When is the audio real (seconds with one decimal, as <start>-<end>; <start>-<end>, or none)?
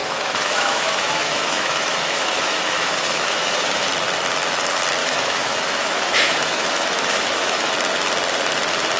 3.9-5.0; 7.7-9.0